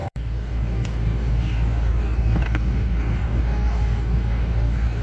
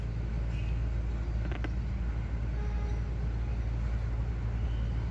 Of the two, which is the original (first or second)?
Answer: second